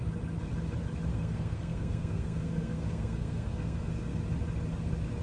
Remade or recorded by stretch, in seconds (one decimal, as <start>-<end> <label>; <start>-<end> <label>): 0.0-1.1 recorded; 1.1-4.2 remade; 4.2-5.2 recorded